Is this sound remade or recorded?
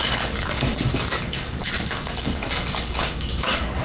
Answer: remade